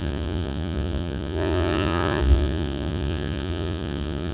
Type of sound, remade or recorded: remade